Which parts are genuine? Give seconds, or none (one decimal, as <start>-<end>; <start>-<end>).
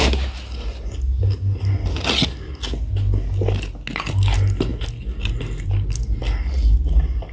0.0-7.3